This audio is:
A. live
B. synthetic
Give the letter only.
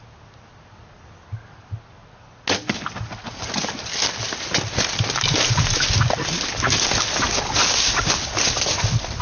A